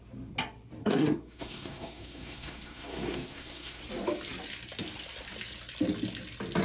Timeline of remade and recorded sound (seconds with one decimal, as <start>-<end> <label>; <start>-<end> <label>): 0.0-0.8 recorded; 0.8-3.8 remade; 3.8-6.6 recorded